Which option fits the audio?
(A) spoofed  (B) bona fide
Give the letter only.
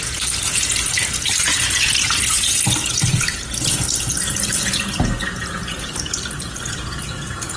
A